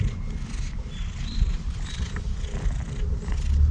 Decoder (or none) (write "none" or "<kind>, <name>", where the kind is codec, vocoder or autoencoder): none